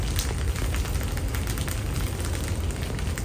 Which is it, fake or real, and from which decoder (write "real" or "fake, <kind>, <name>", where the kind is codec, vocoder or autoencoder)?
real